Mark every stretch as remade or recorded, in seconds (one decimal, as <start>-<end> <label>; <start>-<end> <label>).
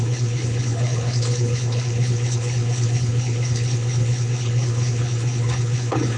0.0-6.2 remade